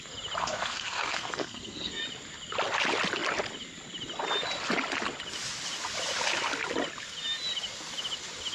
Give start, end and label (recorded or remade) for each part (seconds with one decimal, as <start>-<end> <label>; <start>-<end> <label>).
0.0-0.4 recorded; 0.4-2.0 remade; 2.0-8.5 recorded